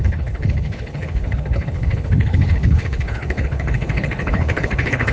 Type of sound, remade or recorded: remade